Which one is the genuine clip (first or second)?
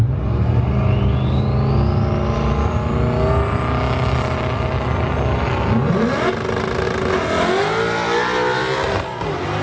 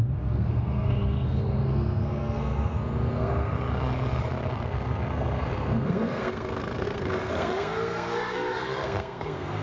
first